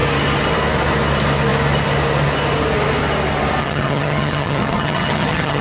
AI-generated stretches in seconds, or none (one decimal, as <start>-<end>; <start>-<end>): 3.6-5.6